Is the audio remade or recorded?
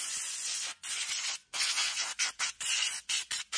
remade